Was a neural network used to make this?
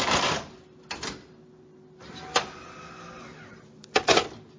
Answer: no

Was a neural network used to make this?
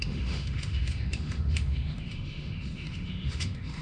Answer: yes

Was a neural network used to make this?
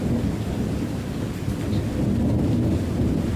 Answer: no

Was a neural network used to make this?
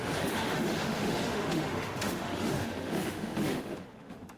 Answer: yes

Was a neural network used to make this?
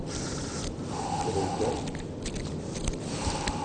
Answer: no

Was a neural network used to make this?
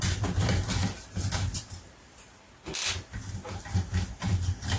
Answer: no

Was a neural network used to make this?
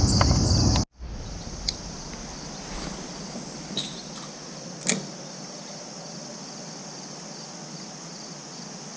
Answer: no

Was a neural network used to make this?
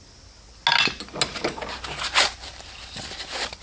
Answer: no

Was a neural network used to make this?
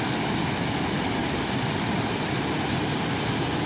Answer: no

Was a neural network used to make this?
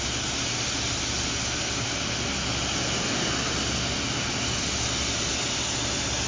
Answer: no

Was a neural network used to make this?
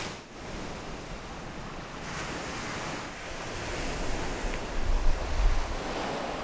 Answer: no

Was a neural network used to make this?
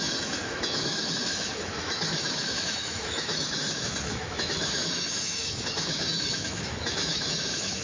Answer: yes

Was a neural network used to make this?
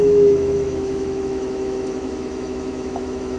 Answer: yes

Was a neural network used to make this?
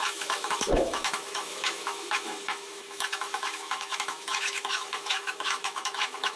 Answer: yes